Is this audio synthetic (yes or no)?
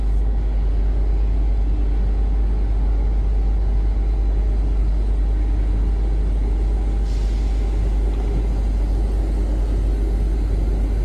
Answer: no